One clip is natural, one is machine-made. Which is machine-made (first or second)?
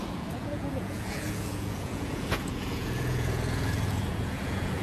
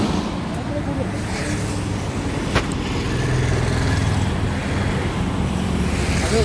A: first